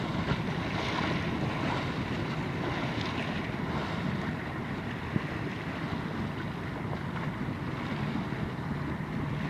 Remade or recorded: recorded